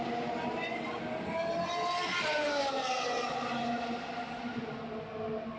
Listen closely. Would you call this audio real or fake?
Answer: real